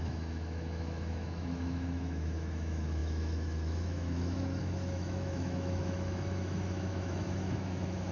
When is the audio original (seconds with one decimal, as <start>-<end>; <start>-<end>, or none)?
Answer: none